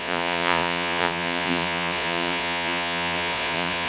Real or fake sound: fake